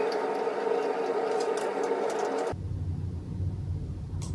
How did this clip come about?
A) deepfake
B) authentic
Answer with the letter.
B